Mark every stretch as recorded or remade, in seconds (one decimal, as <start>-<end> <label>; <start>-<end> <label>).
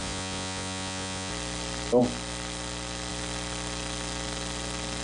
0.0-1.3 remade; 1.3-5.0 recorded